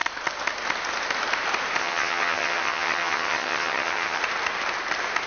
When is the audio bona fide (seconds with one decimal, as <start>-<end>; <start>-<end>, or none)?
0.0-1.8; 4.2-5.3